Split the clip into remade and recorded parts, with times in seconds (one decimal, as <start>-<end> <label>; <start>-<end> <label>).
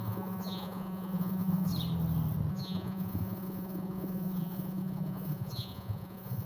0.0-1.7 remade; 1.7-2.5 recorded; 2.5-6.5 remade